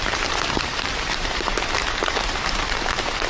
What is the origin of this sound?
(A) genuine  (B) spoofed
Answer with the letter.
B